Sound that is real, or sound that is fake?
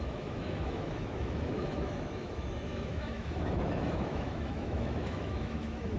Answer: fake